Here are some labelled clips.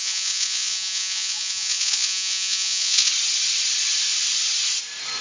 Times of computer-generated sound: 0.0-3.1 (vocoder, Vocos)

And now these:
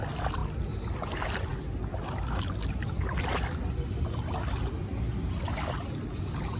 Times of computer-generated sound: none

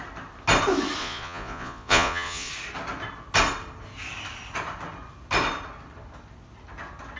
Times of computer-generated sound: 1.0-2.5 (vocoder, Vocos)

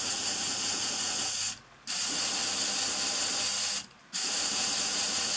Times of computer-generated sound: 0.0-1.4 (vocoder, Vocos); 2.0-2.4; 4.0-5.4

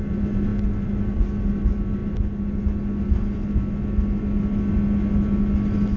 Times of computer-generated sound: none

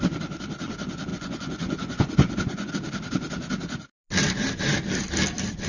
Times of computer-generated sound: 1.1-2.7 (vocoder, Vocos)

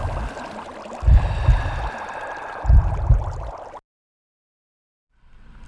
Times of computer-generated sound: none

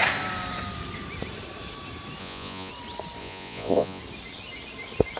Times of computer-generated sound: 2.2-2.7 (vocoder, Vocos); 3.2-4.0